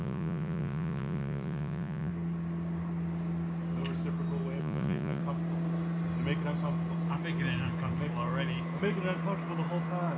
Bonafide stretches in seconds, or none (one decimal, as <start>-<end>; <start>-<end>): 2.1-4.6; 5.2-10.2